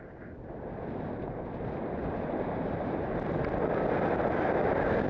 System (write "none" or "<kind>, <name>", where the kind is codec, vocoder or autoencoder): none